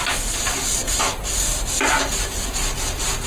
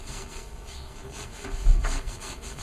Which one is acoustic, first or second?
first